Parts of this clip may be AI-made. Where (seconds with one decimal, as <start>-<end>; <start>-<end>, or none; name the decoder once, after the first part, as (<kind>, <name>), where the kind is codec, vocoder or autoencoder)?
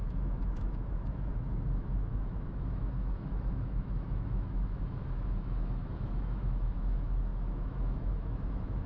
0.0-8.9 (autoencoder, DAC-VAE)